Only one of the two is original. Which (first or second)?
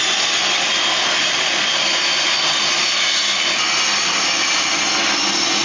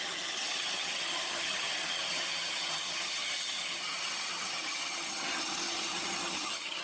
first